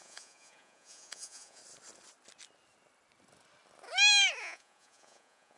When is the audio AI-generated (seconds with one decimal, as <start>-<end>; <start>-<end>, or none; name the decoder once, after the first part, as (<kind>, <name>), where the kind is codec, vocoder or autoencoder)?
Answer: 0.0-1.6 (vocoder, Vocos); 4.4-5.6